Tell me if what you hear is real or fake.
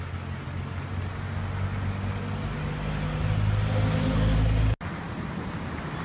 real